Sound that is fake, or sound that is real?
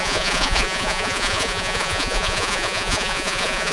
fake